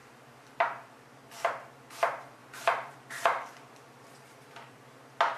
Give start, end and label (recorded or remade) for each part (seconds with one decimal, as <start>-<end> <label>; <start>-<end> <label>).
0.0-1.2 remade; 1.2-2.4 recorded; 2.4-4.8 remade; 4.8-5.4 recorded